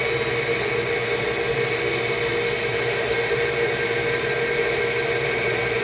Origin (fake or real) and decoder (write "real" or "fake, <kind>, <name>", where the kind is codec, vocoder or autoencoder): real